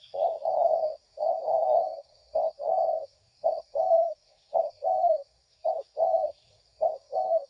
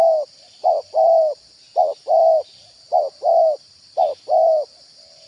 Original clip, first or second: second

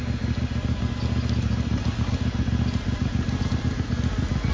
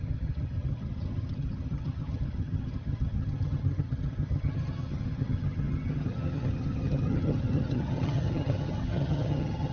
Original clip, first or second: first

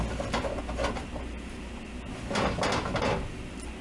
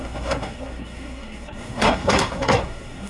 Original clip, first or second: first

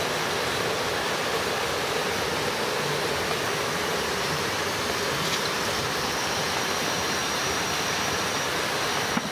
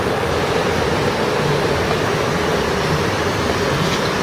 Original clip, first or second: second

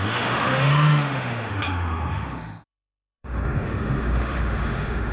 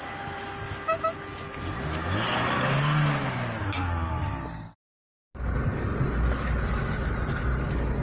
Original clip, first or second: second